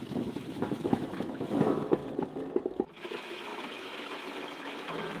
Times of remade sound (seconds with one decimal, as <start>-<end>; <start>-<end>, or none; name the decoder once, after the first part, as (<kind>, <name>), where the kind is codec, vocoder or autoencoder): 0.0-2.0 (autoencoder, DAC-VAE); 2.6-5.2